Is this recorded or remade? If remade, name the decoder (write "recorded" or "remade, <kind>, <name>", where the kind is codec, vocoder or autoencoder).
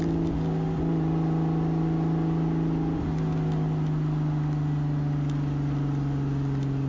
recorded